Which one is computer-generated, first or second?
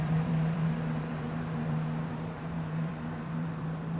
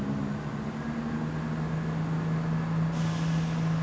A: first